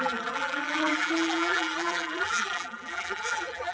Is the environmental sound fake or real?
fake